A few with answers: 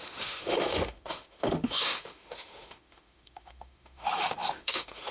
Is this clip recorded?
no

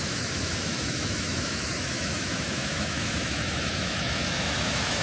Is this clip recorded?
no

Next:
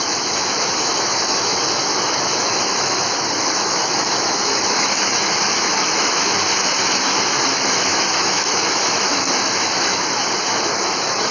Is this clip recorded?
no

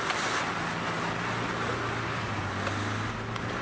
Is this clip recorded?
yes